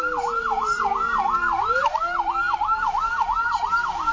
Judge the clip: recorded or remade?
recorded